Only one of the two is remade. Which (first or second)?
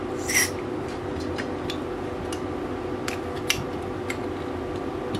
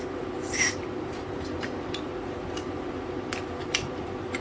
second